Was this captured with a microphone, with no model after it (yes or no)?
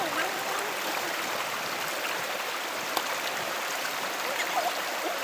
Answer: yes